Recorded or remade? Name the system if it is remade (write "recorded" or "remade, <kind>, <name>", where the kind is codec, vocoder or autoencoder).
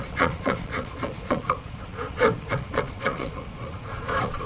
remade, vocoder, Vocos